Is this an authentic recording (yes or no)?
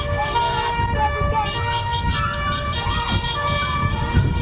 yes